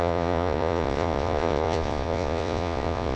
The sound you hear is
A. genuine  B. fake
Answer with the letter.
B